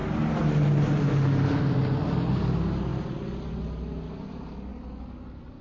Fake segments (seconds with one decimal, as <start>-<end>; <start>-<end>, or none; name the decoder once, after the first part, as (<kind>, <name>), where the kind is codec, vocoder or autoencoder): none